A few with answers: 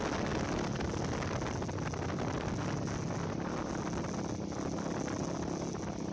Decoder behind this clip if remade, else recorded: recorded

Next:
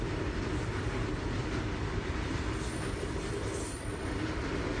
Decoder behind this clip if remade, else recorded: recorded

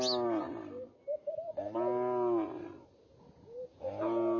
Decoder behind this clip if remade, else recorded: recorded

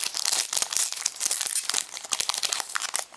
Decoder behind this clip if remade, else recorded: recorded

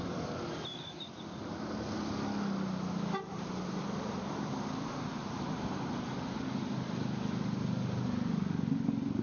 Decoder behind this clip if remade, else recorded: recorded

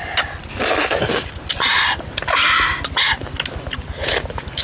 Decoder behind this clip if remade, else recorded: recorded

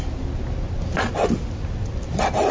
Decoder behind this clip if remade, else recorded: recorded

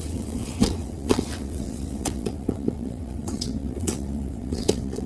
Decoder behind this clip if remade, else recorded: remade, vocoder, WaveNeXt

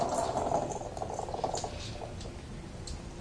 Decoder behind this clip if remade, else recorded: recorded